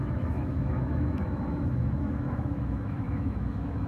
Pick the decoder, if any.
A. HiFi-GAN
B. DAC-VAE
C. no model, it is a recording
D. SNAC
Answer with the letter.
B